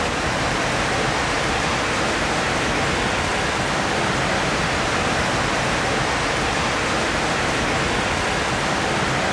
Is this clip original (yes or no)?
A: yes